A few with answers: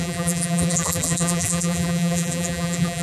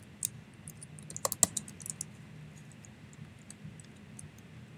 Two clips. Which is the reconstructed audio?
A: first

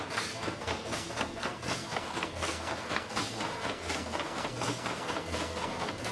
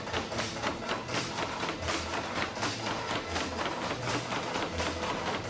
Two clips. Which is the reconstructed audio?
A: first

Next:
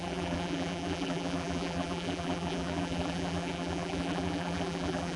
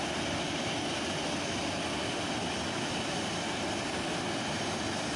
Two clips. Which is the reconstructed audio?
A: first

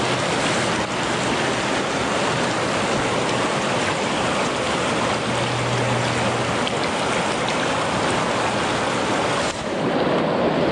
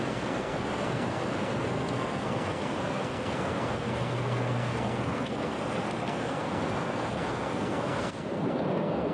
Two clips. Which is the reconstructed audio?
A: second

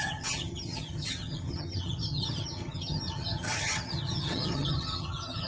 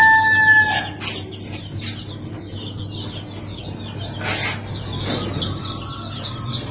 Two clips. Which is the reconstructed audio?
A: first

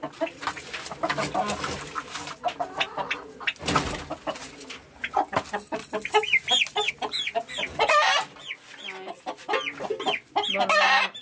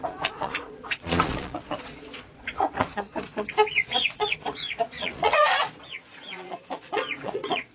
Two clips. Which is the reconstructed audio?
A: second